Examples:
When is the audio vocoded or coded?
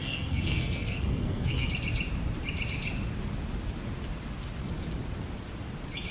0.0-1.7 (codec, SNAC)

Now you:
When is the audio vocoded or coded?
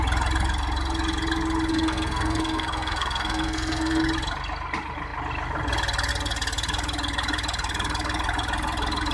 1.7-4.0 (codec, SNAC)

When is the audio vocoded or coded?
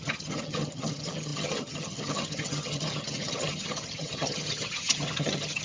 0.0-5.6 (vocoder, HiFi-GAN)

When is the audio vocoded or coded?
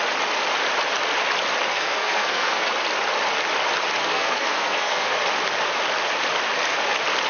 1.7-2.7 (codec, SNAC); 4.0-5.2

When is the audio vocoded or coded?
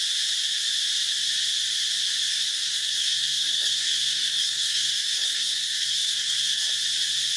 2.3-6.7 (codec, SNAC)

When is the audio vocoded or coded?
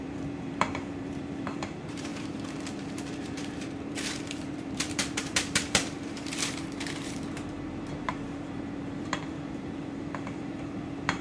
0.0-11.2 (vocoder, BigVGAN v2)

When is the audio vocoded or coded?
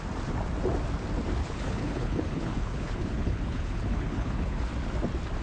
1.4-4.6 (codec, HILCodec)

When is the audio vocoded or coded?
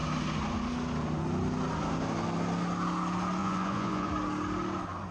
3.4-4.1 (vocoder, Vocos)